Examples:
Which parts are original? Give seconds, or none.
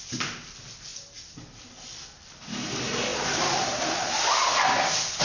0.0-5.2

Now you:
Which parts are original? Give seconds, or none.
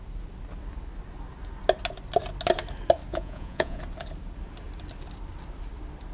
0.0-3.1; 3.8-6.1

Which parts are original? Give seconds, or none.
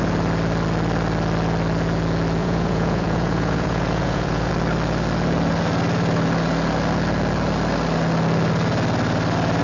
0.0-2.4; 4.5-9.6